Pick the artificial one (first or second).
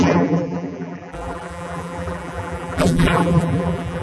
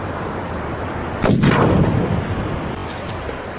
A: first